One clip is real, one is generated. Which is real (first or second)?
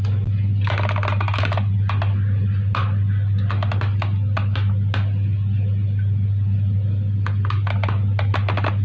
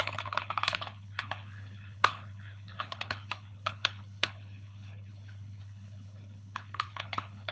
first